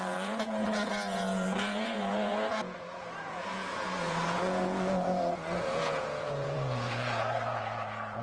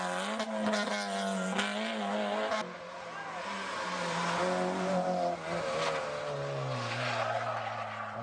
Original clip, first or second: second